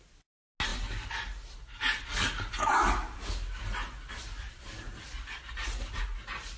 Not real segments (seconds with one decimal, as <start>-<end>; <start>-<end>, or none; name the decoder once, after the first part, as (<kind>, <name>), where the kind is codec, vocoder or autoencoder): none